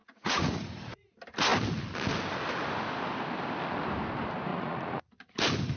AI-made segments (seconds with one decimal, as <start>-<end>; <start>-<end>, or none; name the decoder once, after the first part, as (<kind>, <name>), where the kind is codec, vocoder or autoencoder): 0.0-1.1 (vocoder, Vocos); 4.5-5.3